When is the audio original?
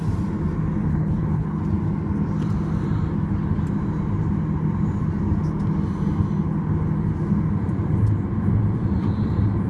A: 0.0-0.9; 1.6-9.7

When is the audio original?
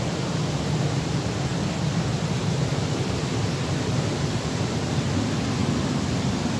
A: 0.0-6.6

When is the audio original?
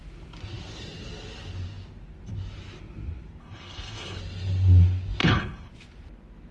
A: 0.0-3.4; 4.2-5.2; 5.7-6.5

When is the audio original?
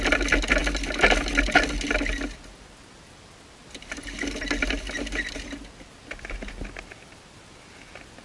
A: 0.0-8.2